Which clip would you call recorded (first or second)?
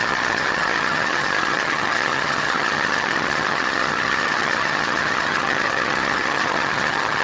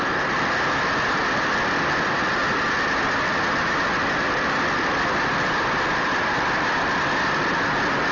second